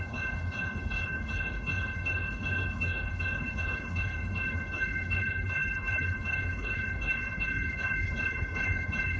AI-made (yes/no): yes